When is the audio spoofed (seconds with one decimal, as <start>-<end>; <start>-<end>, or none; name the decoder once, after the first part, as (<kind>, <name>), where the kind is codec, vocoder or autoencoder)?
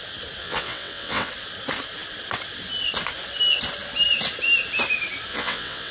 0.4-1.3 (vocoder, WaveNeXt); 5.3-5.9